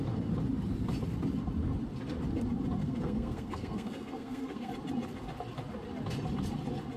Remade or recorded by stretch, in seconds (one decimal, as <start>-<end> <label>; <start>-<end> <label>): 0.0-2.8 recorded; 2.8-4.7 remade; 4.7-7.0 recorded